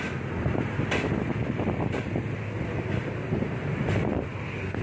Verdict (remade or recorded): recorded